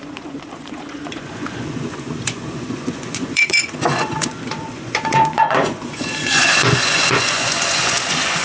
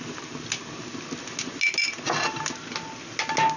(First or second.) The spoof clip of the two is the first